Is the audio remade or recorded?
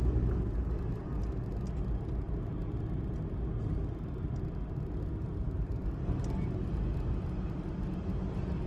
recorded